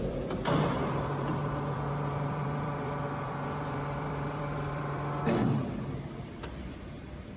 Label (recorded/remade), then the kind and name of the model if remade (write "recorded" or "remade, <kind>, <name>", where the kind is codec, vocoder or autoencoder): remade, vocoder, BigVGAN v2